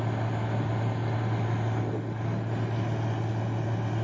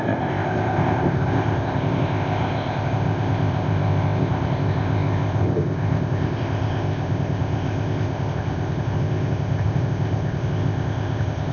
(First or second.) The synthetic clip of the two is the second